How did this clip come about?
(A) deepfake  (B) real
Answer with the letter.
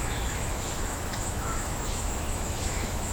A